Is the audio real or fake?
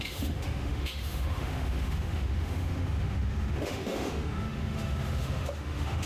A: fake